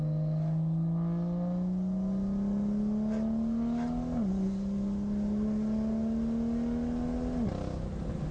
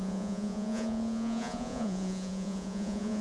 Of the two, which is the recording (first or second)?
first